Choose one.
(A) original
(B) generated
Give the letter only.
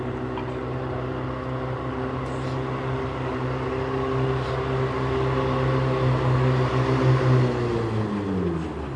A